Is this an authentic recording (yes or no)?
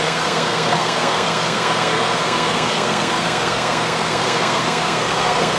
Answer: no